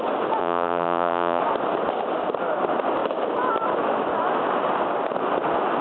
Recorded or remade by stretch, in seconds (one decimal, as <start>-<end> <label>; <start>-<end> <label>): 0.0-0.4 recorded; 0.4-1.4 remade; 1.4-5.8 recorded